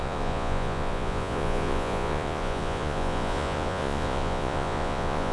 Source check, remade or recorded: remade